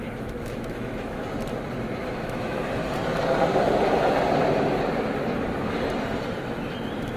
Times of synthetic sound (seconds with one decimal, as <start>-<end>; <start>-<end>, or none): 0.0-1.2; 2.0-2.8